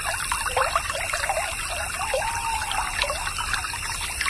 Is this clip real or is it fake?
real